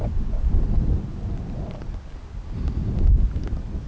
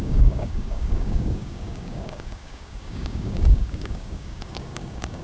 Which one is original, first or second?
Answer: first